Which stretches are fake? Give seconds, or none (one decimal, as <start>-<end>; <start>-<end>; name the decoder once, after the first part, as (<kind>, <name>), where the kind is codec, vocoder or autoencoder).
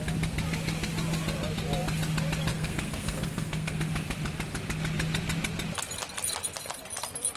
2.5-3.8 (codec, SNAC)